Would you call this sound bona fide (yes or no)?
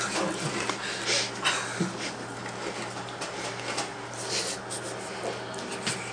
yes